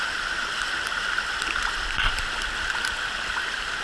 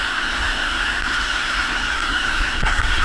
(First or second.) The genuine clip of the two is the first